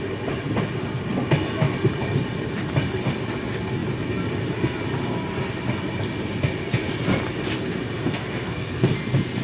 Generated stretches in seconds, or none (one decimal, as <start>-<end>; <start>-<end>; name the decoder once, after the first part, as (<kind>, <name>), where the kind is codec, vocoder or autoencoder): 8.0-8.9 (codec, SNAC)